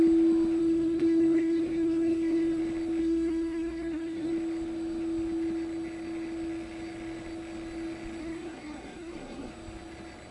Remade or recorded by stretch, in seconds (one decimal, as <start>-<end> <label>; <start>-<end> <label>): 0.0-0.6 recorded; 0.6-2.6 remade; 2.6-3.0 recorded; 3.0-4.3 remade; 4.3-8.2 recorded; 8.2-9.5 remade; 9.5-10.3 recorded